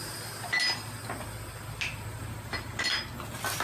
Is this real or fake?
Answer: real